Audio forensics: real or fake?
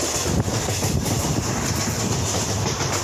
real